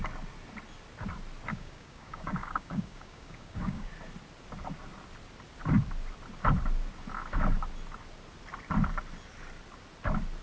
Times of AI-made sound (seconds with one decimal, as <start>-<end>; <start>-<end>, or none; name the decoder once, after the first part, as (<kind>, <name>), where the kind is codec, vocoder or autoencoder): 1.5-3.9 (codec, DAC)

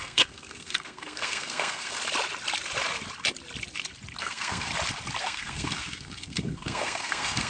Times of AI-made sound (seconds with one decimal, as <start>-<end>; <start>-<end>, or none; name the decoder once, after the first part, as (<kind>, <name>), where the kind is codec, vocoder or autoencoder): 0.0-2.0 (codec, SNAC); 4.2-4.7; 5.2-7.5

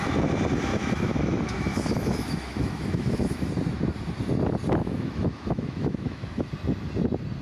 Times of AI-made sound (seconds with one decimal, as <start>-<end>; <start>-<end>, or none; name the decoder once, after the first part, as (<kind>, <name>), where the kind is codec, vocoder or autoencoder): 0.7-3.5 (autoencoder, DAC-VAE); 4.8-6.5

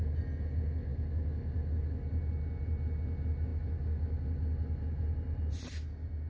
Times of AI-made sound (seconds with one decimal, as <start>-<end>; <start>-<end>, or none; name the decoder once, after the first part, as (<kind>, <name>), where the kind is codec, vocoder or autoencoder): none

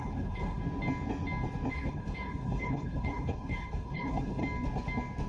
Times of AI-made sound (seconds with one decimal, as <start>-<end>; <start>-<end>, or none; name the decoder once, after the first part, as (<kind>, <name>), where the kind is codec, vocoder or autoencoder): 0.0-0.6 (codec, HILCodec); 1.7-4.4

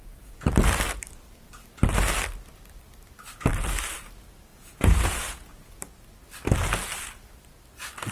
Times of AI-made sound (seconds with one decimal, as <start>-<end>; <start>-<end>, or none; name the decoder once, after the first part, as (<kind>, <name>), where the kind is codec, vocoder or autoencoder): 0.0-0.5 (vocoder, Vocos); 4.5-5.8

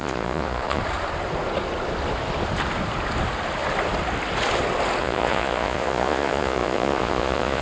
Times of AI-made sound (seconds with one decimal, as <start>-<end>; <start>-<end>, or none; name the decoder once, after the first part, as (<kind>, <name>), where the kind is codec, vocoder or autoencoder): 0.0-0.8 (vocoder, Vocos); 5.0-7.6